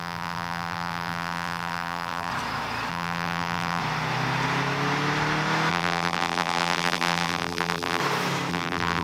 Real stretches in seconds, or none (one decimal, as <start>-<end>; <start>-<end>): 2.3-2.9; 3.8-5.7; 8.0-8.5